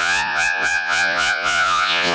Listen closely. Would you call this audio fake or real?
fake